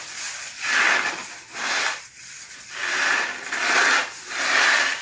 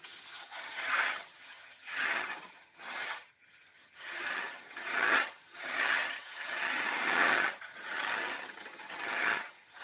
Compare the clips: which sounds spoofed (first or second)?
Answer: second